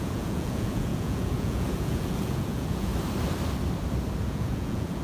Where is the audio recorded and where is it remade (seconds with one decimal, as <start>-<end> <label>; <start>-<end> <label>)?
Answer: 0.0-2.9 remade; 2.9-4.2 recorded; 4.2-5.0 remade